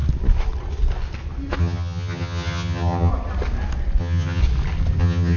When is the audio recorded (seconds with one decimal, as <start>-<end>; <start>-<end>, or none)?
0.0-1.6; 3.1-4.0; 4.4-5.0